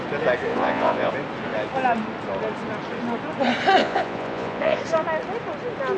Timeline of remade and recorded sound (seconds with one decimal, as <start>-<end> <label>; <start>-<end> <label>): 0.0-0.5 recorded; 0.5-1.1 remade; 1.1-3.8 recorded; 3.8-4.8 remade; 4.8-6.0 recorded